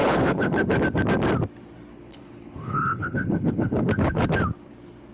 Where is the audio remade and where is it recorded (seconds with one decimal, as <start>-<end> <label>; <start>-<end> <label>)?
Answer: 0.0-0.8 remade; 0.8-1.9 recorded; 1.9-4.4 remade; 4.4-5.1 recorded